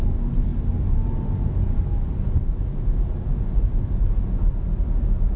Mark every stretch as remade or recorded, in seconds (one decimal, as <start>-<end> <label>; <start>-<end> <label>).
0.0-5.4 recorded